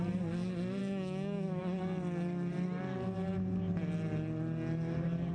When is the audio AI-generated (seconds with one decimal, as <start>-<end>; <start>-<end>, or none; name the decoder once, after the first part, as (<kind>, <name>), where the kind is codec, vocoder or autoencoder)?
0.8-1.6 (autoencoder, DAC-VAE)